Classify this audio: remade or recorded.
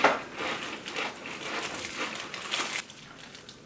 recorded